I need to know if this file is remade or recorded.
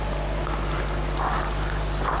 recorded